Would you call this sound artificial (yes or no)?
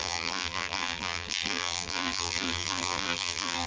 yes